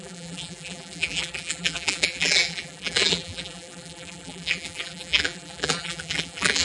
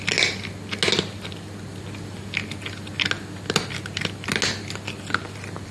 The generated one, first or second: first